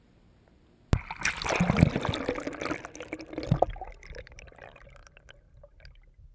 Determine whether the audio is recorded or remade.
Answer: recorded